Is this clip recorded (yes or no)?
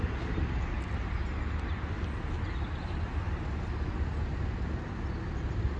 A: yes